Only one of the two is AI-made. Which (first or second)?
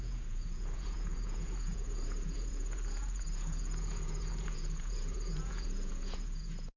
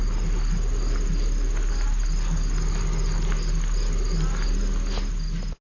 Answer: first